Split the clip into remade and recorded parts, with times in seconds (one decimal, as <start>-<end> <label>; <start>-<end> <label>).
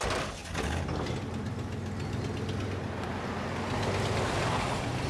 0.0-5.1 recorded